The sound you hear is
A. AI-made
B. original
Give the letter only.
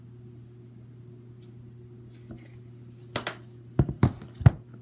B